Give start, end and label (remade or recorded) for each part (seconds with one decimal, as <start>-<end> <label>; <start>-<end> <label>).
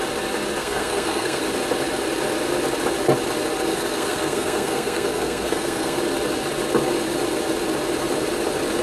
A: 0.0-0.6 recorded; 0.6-1.4 remade; 1.4-3.7 recorded; 3.7-6.0 remade; 6.0-8.8 recorded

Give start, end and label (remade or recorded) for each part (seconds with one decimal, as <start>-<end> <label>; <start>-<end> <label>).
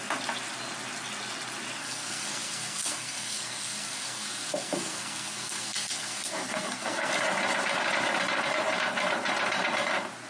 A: 0.0-1.8 recorded; 1.8-7.1 remade; 7.1-10.3 recorded